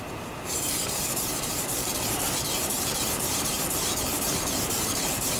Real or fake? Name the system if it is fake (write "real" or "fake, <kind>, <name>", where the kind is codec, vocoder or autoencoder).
fake, vocoder, BigVGAN v2